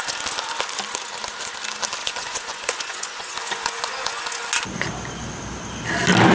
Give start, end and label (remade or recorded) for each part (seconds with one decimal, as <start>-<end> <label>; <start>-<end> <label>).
0.0-2.0 recorded; 2.0-4.4 remade; 4.4-6.3 recorded